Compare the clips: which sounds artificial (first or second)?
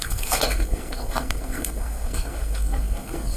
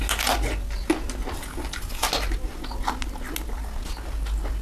first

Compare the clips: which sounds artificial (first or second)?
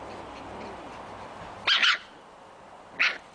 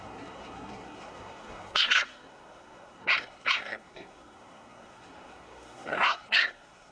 second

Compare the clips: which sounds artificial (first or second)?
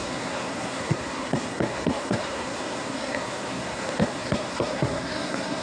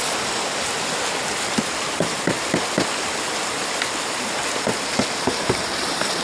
first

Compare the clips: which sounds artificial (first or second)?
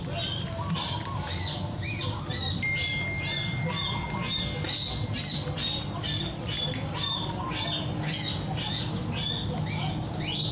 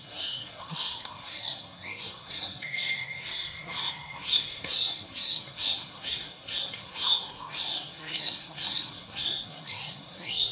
second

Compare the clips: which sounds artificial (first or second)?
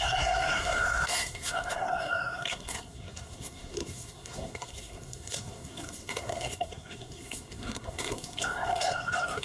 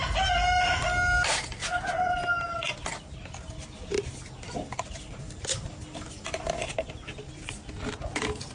first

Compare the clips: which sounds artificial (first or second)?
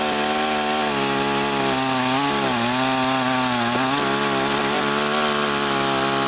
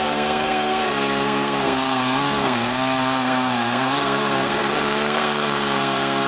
second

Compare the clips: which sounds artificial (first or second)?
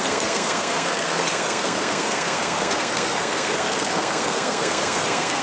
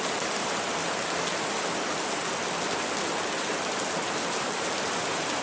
first